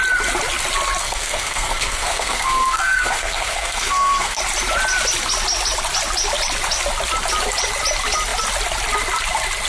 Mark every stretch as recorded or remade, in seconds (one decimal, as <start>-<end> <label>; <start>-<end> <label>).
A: 0.0-1.0 recorded; 1.0-4.4 remade; 4.4-9.7 recorded